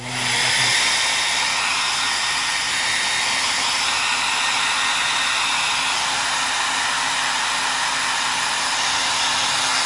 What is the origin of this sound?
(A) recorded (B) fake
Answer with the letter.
A